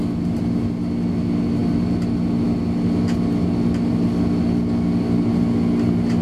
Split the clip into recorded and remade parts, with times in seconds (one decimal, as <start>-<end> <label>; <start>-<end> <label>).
0.0-6.2 recorded